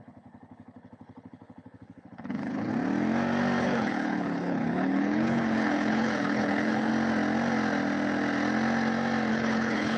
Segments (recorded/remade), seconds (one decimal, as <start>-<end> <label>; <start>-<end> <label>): 0.0-2.7 remade; 2.7-3.6 recorded; 3.6-6.9 remade; 6.9-9.3 recorded; 9.3-10.0 remade

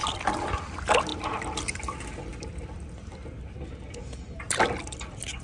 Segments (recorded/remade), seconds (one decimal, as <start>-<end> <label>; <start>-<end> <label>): 0.0-5.4 recorded

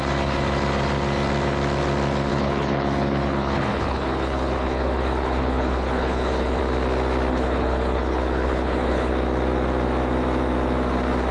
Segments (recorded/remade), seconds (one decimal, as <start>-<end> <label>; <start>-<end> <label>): 0.0-2.3 recorded; 2.3-6.6 remade; 6.6-7.3 recorded; 7.3-9.1 remade; 9.1-11.3 recorded

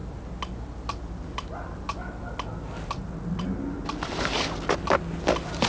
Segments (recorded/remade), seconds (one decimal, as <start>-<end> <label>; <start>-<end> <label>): 0.0-5.7 recorded